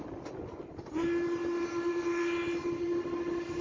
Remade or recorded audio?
recorded